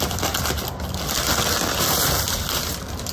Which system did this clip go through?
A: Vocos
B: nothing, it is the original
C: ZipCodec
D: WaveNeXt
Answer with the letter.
B